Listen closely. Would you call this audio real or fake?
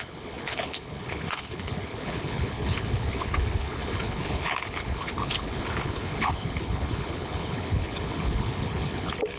fake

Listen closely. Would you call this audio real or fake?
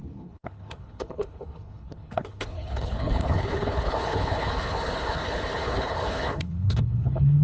fake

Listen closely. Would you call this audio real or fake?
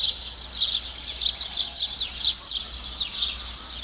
real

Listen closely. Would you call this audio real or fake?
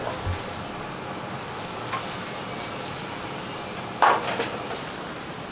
real